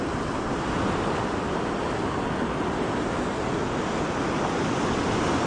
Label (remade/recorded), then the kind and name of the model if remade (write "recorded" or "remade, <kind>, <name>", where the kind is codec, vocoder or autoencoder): recorded